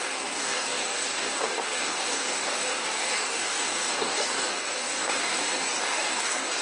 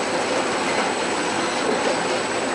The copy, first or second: first